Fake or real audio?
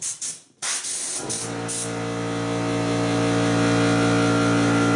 real